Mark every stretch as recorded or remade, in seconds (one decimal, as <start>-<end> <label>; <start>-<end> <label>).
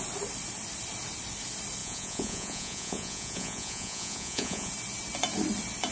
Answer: 0.0-1.8 recorded; 1.8-4.7 remade; 4.7-5.9 recorded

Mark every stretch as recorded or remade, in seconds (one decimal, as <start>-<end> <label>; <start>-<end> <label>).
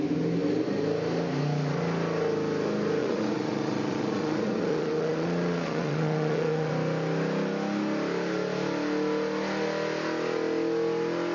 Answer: 0.0-3.0 recorded; 3.0-6.7 remade; 6.7-11.3 recorded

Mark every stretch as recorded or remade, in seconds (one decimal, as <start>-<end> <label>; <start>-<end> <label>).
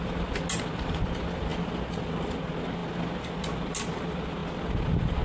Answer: 0.0-5.2 recorded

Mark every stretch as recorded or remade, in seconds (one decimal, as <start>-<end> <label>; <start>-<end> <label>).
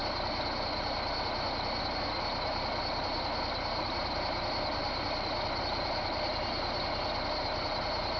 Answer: 0.0-8.2 recorded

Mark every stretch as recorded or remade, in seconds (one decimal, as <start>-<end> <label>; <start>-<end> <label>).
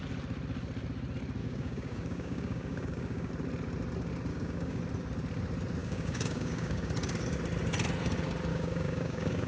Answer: 0.0-1.4 recorded; 1.4-3.3 remade; 3.3-4.3 recorded; 4.3-4.8 remade; 4.8-5.8 recorded; 5.8-6.9 remade; 6.9-8.5 recorded; 8.5-9.5 remade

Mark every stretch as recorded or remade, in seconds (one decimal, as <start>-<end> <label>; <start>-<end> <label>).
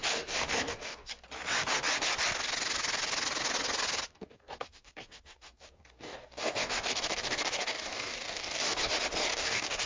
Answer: 0.0-1.1 remade; 1.1-4.1 recorded; 4.1-8.9 remade; 8.9-9.3 recorded; 9.3-9.9 remade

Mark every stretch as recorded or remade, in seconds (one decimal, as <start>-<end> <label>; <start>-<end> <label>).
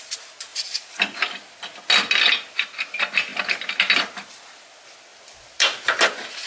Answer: 0.0-6.5 recorded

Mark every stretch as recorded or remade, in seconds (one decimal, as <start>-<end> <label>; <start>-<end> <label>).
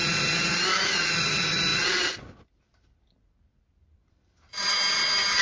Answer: 0.0-5.4 recorded